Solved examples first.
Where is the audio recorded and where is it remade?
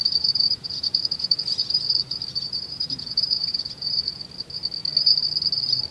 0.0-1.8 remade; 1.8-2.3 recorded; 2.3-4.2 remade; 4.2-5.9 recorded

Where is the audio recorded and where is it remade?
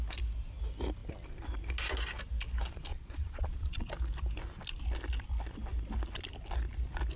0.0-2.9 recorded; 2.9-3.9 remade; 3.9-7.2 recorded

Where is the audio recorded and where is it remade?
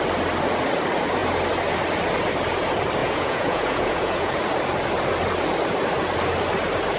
0.0-3.0 recorded; 3.0-4.4 remade; 4.4-7.0 recorded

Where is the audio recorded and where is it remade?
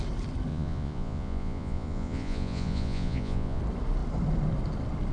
0.0-0.5 recorded; 0.5-3.6 remade; 3.6-5.1 recorded